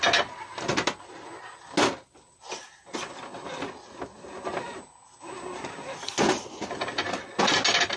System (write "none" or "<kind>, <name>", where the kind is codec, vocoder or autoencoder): none